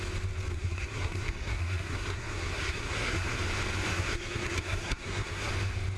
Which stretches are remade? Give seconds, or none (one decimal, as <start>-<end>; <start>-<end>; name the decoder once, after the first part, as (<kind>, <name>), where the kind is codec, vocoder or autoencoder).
0.5-3.4 (codec, SNAC); 3.9-5.5